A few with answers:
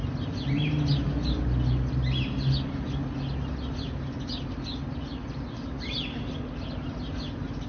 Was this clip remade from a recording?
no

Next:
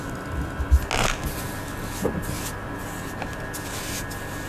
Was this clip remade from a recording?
no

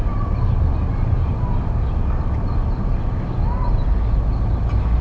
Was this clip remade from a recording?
no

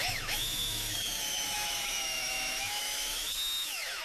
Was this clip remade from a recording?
yes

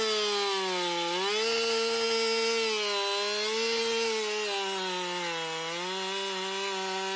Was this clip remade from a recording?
no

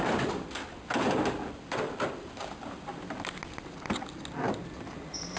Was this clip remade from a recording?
no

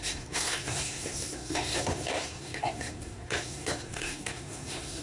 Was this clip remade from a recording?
yes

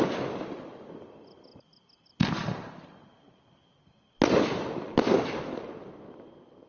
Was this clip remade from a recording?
no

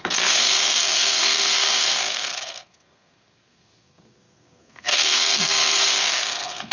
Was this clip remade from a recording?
yes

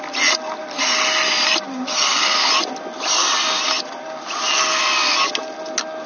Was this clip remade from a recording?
no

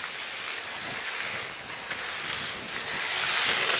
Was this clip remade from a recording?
no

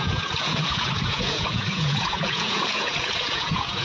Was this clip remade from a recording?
yes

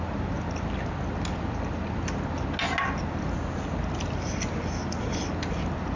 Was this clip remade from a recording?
no